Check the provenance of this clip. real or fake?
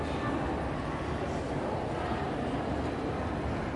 real